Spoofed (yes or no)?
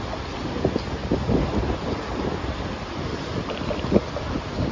no